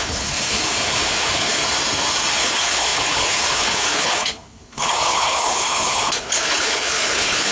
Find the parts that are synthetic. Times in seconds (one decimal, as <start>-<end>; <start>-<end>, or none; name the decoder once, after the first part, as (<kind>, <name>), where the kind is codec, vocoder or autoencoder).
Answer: 0.0-1.6 (codec, HILCodec); 2.3-7.5